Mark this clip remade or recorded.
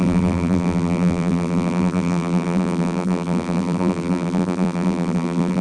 remade